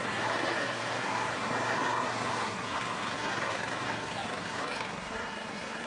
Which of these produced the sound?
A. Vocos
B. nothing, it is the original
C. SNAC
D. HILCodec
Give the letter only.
C